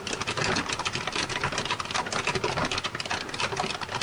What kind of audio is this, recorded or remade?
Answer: recorded